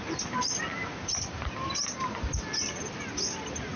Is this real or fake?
real